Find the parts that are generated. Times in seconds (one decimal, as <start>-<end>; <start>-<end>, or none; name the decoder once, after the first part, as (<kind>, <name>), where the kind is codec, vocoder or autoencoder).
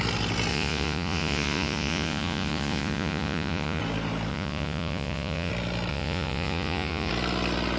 0.5-3.8 (vocoder, Vocos); 4.3-5.5; 5.9-7.1